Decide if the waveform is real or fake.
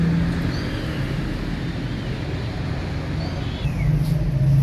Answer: real